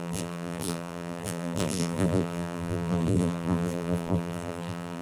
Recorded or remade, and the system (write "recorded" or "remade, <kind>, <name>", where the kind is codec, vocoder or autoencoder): remade, vocoder, BigVGAN v2